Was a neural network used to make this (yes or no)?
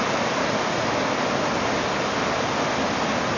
no